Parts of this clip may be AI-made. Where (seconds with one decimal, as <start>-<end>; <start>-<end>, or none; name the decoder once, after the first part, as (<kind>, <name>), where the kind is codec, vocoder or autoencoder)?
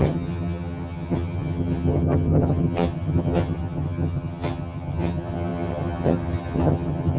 0.0-7.2 (vocoder, HiFi-GAN)